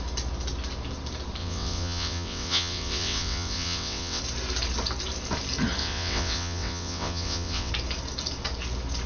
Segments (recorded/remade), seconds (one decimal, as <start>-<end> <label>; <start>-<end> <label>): 0.0-1.4 recorded; 1.4-4.2 remade; 4.2-5.8 recorded; 5.8-7.7 remade; 7.7-9.1 recorded